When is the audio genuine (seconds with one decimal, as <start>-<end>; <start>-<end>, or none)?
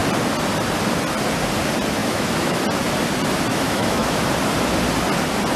0.0-2.0; 2.6-3.5; 4.2-5.6